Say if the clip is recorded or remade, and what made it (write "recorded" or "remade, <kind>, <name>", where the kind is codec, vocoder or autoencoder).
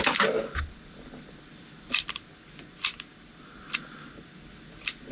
recorded